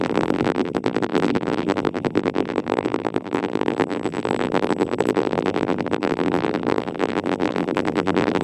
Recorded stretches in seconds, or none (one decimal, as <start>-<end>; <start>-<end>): none